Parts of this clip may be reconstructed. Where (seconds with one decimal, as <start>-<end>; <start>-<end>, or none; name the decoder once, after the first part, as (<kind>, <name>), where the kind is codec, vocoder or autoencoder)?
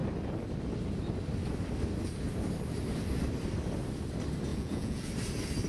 4.5-5.1 (vocoder, Vocos)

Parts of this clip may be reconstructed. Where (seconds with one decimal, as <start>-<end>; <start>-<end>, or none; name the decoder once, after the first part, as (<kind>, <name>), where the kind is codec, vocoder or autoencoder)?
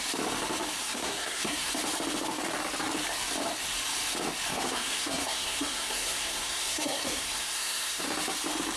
0.8-1.7 (codec, SNAC); 4.5-8.0